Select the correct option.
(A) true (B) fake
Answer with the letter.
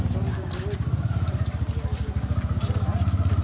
A